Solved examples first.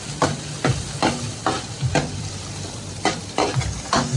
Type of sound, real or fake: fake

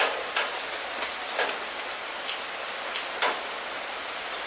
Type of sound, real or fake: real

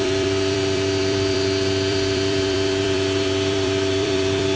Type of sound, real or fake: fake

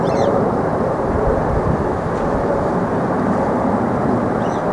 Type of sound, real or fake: fake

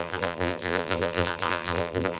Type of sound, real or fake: fake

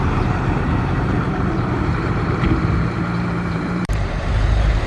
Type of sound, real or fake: fake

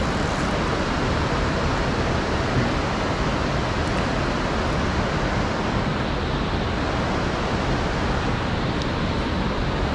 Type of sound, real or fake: real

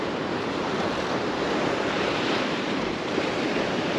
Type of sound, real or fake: fake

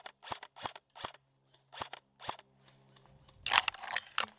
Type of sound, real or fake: real